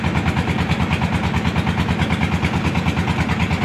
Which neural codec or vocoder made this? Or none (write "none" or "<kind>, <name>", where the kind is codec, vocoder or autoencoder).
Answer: none